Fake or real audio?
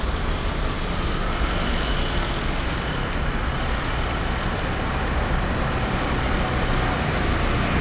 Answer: real